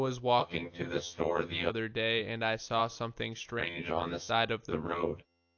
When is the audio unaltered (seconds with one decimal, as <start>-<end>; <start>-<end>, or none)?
0.0-0.4; 1.7-3.6; 4.3-4.7